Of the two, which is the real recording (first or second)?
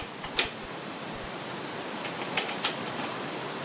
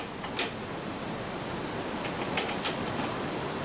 second